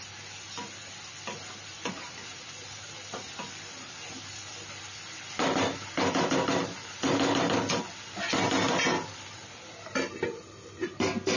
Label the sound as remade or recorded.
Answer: recorded